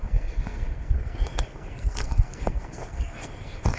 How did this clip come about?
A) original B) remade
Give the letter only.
B